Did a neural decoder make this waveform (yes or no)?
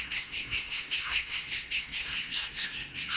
yes